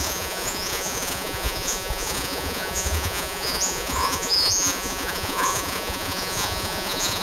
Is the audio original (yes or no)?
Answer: no